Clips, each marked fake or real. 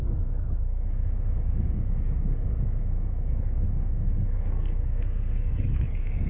fake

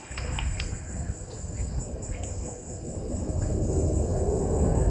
fake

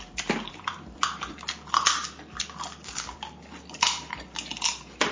real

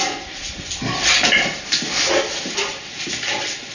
real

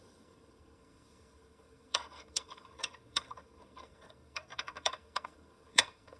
fake